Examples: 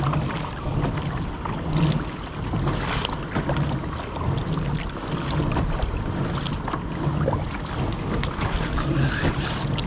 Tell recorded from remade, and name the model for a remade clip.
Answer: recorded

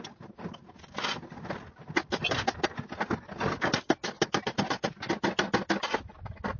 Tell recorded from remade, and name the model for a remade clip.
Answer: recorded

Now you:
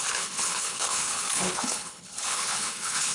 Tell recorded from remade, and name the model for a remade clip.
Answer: remade, codec, HILCodec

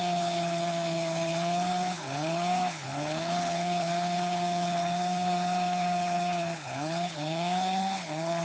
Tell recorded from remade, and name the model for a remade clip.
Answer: remade, codec, HILCodec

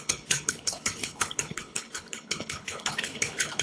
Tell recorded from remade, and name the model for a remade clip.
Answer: remade, codec, HILCodec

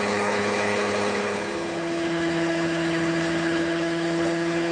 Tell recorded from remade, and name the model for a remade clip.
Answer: remade, codec, HILCodec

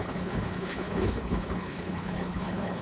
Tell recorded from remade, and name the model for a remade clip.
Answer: remade, codec, HILCodec